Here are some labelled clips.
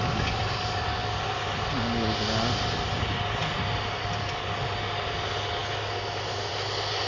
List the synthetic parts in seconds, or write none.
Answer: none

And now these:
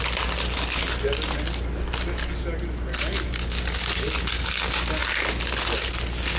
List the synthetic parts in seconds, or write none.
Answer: none